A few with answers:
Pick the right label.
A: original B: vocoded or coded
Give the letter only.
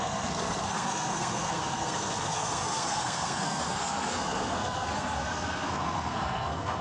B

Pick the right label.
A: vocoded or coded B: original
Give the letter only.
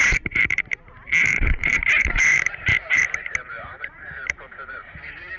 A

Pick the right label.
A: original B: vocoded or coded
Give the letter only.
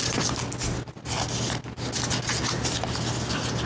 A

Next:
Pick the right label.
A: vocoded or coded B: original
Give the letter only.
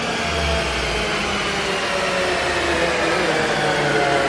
B